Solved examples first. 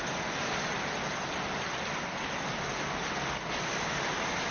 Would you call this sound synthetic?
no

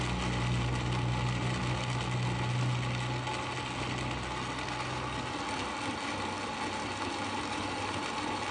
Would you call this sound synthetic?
no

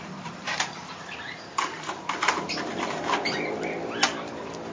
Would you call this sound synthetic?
yes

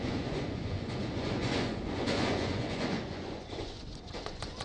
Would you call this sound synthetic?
yes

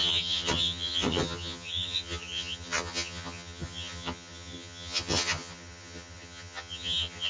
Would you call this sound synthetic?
yes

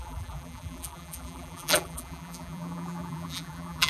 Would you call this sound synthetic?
yes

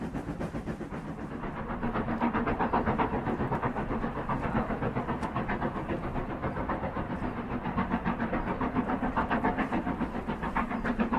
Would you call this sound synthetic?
no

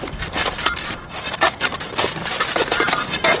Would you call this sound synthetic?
no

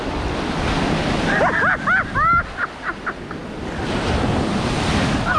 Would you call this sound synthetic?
no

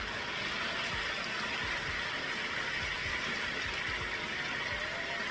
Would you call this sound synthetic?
no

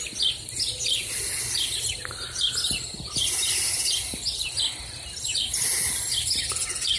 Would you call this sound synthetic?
no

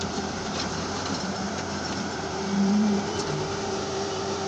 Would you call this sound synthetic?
yes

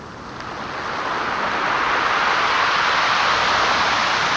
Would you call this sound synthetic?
no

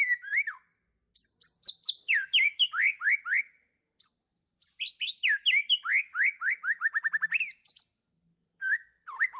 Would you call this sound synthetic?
no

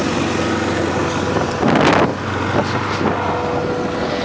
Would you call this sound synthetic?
no